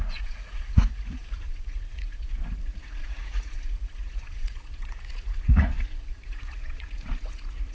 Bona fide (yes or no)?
no